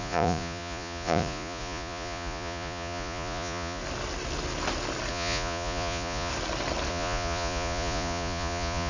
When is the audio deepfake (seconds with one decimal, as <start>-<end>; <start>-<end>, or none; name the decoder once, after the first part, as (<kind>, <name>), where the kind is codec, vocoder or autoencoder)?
0.0-3.8 (vocoder, Vocos); 5.1-6.3; 6.9-8.9